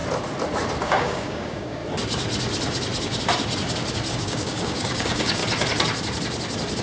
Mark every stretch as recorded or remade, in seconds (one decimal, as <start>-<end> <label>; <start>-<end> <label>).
0.0-0.8 recorded; 0.8-1.8 remade; 1.8-4.1 recorded; 4.1-5.4 remade; 5.4-6.8 recorded